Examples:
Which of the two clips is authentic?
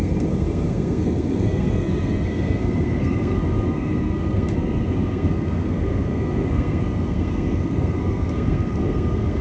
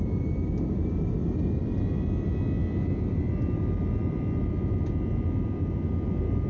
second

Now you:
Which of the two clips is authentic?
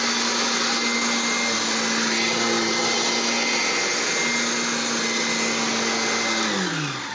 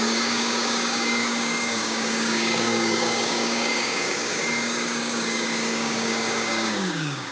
first